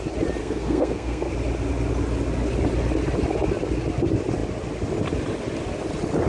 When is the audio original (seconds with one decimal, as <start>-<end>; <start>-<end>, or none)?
0.0-0.4; 1.3-6.3

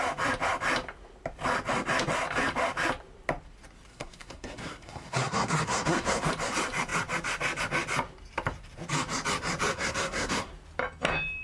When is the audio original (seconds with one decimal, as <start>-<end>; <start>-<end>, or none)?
0.0-3.9; 6.3-9.7; 10.5-11.4

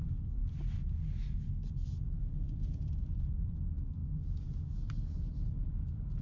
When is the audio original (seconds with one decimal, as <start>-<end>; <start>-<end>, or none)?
0.0-6.2

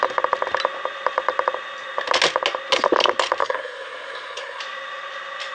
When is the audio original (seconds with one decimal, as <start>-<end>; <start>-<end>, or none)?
0.0-3.4; 4.6-5.5

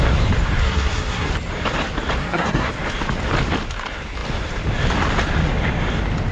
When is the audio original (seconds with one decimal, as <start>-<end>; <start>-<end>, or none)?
0.0-0.6; 1.3-2.2; 2.7-6.3

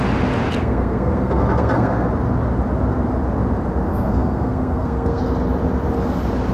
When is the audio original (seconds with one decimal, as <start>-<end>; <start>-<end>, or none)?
0.0-0.6; 2.1-3.9; 5.2-6.5